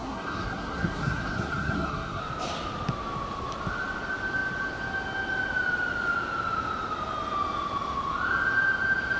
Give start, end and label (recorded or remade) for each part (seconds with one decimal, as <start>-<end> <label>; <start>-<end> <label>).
0.0-2.2 remade; 2.2-9.2 recorded